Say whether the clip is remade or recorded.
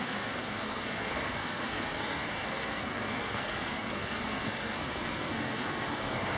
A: remade